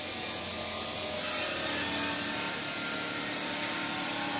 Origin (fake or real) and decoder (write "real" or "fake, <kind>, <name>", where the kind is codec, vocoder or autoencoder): real